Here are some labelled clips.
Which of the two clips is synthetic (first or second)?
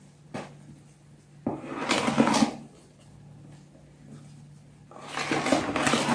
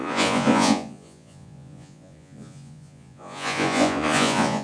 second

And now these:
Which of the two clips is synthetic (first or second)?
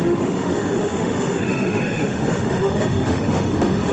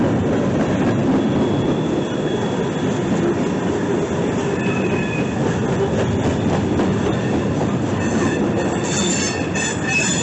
first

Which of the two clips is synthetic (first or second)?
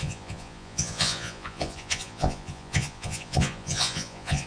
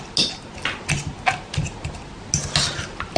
first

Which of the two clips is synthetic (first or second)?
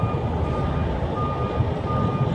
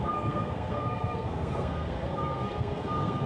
second